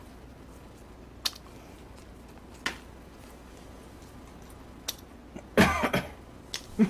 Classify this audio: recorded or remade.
recorded